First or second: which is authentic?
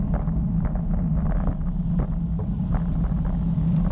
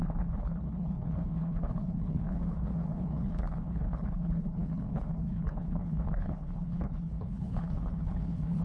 first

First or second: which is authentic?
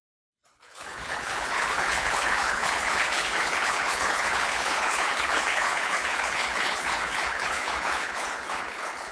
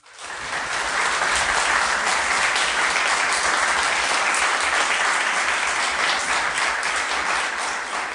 second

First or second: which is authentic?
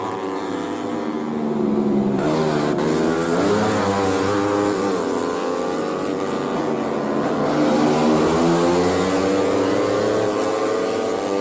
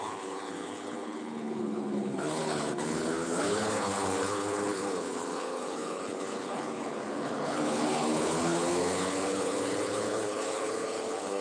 first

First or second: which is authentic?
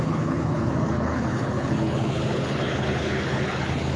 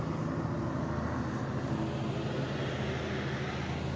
second